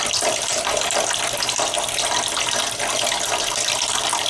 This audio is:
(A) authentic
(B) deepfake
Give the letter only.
A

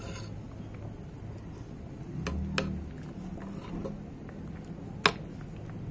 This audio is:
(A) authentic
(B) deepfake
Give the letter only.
A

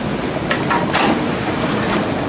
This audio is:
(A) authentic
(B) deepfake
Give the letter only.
A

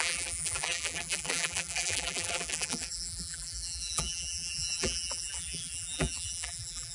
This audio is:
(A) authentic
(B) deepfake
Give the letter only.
B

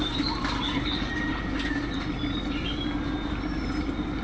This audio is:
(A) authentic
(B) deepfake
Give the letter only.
A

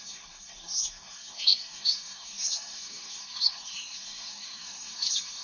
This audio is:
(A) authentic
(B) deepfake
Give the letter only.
B